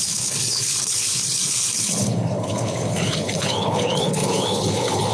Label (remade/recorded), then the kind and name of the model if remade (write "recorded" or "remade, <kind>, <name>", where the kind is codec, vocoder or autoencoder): remade, codec, HILCodec